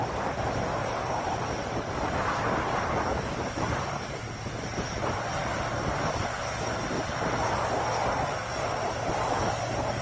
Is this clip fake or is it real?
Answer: real